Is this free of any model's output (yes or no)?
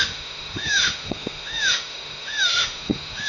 no